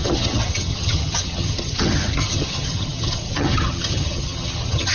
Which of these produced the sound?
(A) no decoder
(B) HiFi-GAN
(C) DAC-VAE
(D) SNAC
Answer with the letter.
B